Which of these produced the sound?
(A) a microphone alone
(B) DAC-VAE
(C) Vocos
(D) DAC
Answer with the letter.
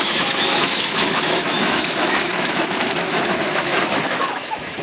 B